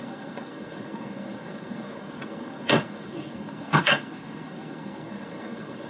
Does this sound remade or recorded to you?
remade